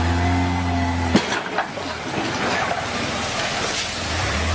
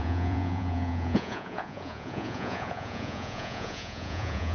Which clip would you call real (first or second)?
first